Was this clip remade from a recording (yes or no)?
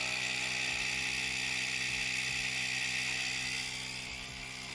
no